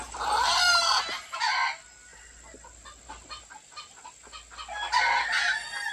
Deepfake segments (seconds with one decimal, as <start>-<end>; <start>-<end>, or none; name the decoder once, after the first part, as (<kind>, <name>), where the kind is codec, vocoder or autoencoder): none